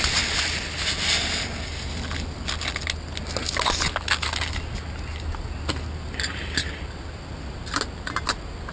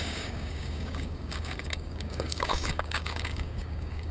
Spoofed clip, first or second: second